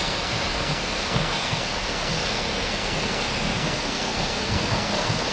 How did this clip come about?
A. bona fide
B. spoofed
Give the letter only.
B